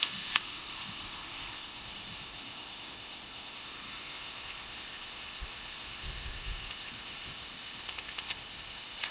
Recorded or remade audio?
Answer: remade